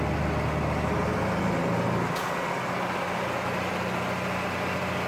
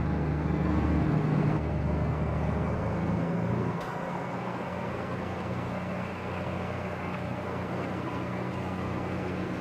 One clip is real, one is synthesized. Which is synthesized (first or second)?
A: second